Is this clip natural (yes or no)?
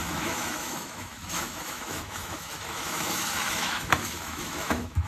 no